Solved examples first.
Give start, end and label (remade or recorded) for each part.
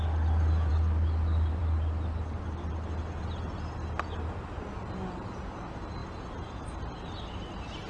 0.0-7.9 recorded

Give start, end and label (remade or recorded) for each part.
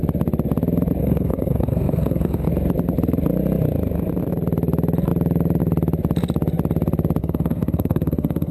0.0-1.0 recorded; 1.0-2.5 remade; 2.5-7.2 recorded; 7.2-8.5 remade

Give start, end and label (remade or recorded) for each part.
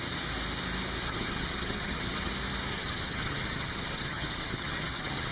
0.0-1.0 recorded; 1.0-2.3 remade; 2.3-2.7 recorded; 2.7-5.3 remade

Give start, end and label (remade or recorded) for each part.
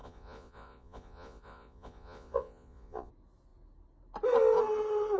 0.0-3.1 remade; 3.1-5.2 recorded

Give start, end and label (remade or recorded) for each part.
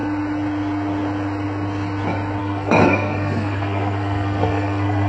0.0-2.4 recorded; 2.4-5.1 remade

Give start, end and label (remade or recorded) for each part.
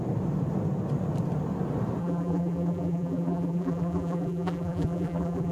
0.0-2.0 recorded; 2.0-5.5 remade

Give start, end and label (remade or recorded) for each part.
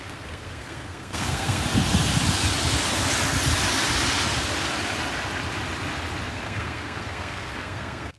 0.0-1.6 remade; 1.6-6.3 recorded; 6.3-8.2 remade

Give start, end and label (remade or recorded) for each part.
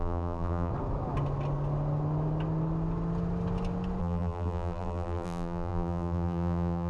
0.0-0.7 remade; 0.7-4.0 recorded; 4.0-6.9 remade